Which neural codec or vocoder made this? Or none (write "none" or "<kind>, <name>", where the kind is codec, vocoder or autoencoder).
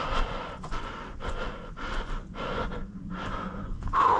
vocoder, Vocos